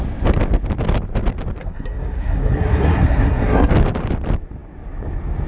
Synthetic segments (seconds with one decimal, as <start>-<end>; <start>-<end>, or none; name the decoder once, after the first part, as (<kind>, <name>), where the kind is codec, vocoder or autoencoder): 1.6-3.7 (codec, SNAC)